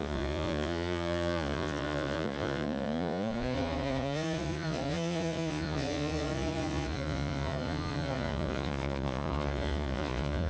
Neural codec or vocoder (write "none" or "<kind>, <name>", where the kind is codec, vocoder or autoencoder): vocoder, Vocos